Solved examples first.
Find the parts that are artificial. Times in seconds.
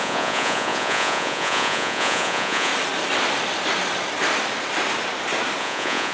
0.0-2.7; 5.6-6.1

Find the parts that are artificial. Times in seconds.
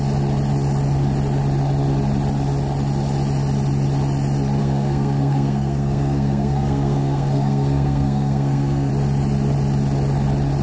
4.6-8.9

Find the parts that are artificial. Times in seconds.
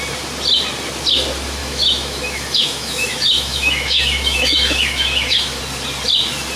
1.6-5.6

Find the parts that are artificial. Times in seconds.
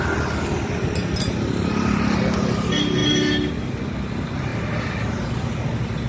3.0-3.5; 4.5-5.1